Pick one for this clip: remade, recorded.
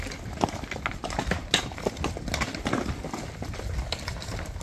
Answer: recorded